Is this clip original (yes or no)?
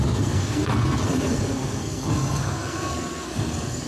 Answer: no